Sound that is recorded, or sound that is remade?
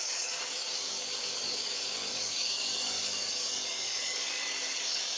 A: remade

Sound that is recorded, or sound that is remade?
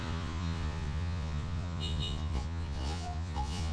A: remade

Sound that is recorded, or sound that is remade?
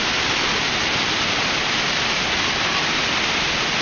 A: recorded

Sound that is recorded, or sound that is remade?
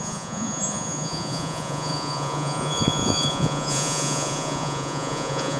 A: remade